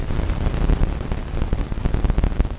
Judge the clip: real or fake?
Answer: real